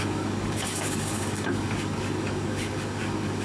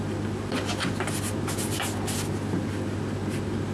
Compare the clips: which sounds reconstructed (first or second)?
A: first